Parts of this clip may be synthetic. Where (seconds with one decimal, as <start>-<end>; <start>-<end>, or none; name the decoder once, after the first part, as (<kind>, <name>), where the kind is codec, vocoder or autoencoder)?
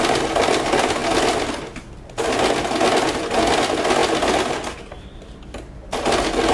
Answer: none